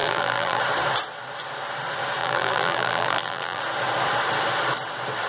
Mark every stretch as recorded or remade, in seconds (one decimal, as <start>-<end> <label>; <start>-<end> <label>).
0.0-0.6 remade; 0.6-2.2 recorded; 2.2-3.6 remade; 3.6-5.3 recorded